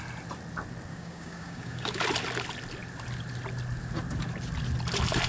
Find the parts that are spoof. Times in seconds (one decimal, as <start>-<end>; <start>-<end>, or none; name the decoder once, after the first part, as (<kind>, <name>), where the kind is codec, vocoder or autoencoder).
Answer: 0.9-2.0 (codec, DAC)